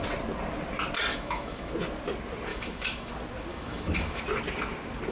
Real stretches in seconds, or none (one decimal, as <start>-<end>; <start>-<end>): 0.0-1.1; 1.7-2.5; 3.1-3.5; 4.2-5.1